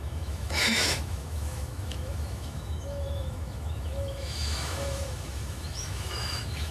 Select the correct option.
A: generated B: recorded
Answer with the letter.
A